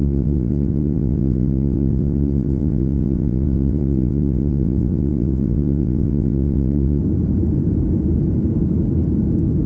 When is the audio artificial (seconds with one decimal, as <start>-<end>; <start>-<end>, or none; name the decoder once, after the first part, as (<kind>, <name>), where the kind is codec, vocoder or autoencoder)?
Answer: 0.0-7.0 (vocoder, WaveNeXt)

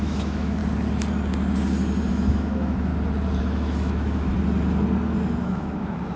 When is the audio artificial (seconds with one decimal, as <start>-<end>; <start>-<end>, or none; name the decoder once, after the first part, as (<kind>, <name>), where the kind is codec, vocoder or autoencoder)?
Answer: 0.0-0.6 (autoencoder, DAC-VAE); 2.1-2.9; 3.4-4.3; 5.4-6.2

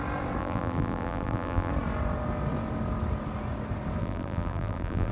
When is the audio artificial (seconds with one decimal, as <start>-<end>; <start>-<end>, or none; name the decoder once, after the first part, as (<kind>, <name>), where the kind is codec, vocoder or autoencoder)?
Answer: 0.4-1.7 (vocoder, BigVGAN v2); 4.0-5.1

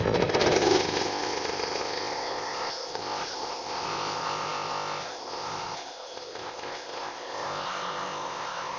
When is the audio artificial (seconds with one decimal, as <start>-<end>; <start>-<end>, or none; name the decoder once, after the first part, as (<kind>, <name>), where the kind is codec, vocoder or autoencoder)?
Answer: 0.0-8.8 (codec, ZipCodec)

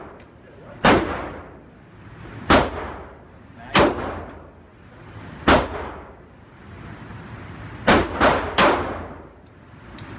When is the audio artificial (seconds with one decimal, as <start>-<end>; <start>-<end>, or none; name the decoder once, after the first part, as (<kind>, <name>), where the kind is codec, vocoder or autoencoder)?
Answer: none